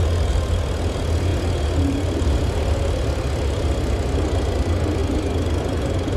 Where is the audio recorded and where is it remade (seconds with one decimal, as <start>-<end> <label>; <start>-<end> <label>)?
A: 0.0-6.2 recorded